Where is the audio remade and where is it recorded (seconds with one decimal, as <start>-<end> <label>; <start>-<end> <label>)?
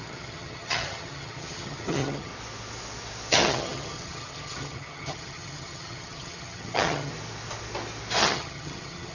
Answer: 0.0-2.3 remade; 2.3-3.3 recorded; 3.3-7.1 remade; 7.1-8.2 recorded; 8.2-9.1 remade